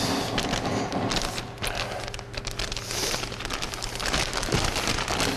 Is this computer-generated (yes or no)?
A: no